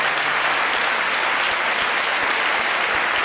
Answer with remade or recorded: recorded